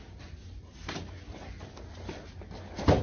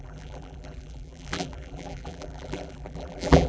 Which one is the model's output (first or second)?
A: second